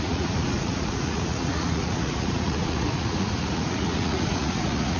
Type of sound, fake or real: fake